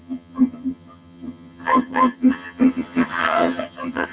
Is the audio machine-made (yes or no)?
yes